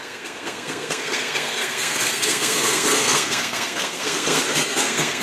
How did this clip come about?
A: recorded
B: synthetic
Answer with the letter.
B